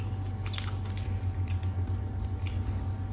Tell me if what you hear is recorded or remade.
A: recorded